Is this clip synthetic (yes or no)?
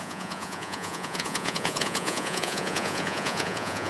yes